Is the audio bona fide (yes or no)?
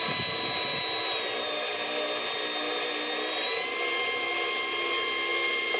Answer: yes